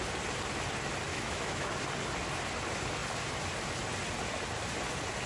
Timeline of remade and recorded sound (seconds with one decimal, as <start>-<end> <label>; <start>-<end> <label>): 0.0-1.1 recorded; 1.1-1.7 remade; 1.7-5.3 recorded